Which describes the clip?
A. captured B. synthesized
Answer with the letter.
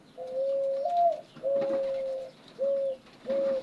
A